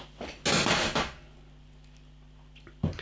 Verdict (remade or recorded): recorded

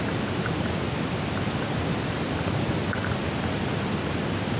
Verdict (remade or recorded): recorded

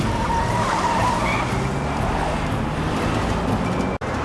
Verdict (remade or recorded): recorded